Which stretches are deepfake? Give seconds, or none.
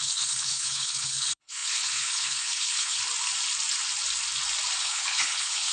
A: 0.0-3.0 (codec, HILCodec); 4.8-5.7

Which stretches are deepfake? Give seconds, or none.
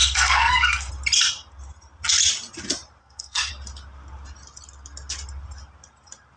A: 0.0-0.9 (codec, SNAC); 3.0-3.5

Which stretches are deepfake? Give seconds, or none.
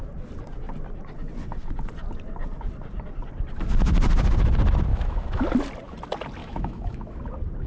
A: 4.9-5.4 (autoencoder, DAC-VAE); 6.4-7.2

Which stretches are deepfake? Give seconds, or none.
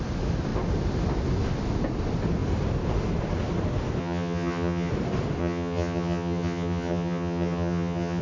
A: 4.0-4.9 (vocoder, HiFi-GAN); 5.4-8.2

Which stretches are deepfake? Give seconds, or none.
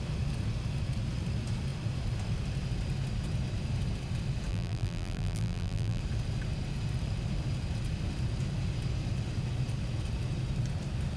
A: 4.5-6.0 (vocoder, BigVGAN v2)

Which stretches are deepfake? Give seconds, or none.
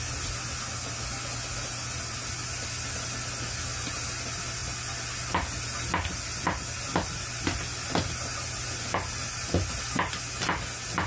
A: none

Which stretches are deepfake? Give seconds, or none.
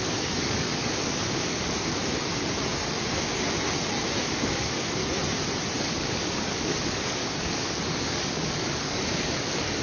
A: 0.0-2.0 (codec, DAC); 4.2-5.0; 5.8-9.8